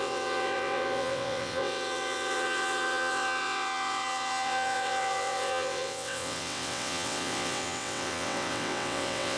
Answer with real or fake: fake